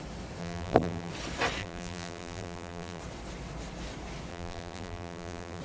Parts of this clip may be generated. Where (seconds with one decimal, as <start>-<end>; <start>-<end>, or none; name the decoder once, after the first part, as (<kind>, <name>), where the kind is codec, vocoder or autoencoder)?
0.4-1.1 (vocoder, BigVGAN v2); 1.6-3.0; 4.3-5.6